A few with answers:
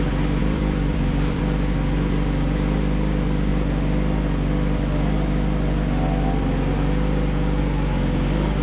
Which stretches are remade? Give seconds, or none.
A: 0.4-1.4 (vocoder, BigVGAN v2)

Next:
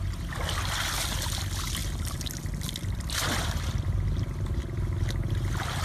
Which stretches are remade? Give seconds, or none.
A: none